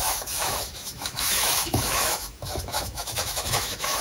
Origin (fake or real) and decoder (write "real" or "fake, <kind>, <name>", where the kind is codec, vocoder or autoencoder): fake, autoencoder, DAC-VAE